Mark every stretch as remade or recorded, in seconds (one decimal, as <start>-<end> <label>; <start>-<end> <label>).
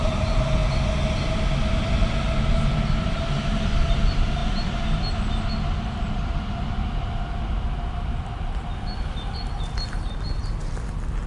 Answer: 0.0-11.3 recorded